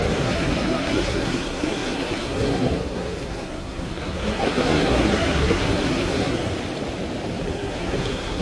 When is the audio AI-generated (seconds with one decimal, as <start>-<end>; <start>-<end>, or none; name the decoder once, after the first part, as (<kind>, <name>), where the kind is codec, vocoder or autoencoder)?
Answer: 0.0-6.5 (codec, SNAC); 7.4-8.4